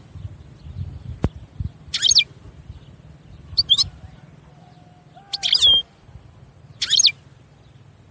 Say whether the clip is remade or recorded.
recorded